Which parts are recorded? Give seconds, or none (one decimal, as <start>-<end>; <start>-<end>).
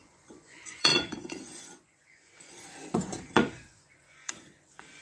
none